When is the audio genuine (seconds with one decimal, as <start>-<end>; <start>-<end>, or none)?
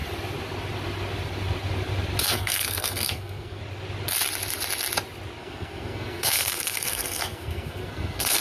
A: 0.0-2.2; 3.6-5.4